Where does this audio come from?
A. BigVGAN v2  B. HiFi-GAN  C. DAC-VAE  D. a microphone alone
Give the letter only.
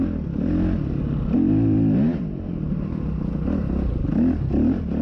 D